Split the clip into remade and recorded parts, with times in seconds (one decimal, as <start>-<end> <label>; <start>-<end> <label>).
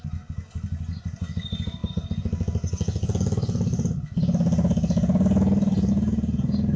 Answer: 0.0-6.8 recorded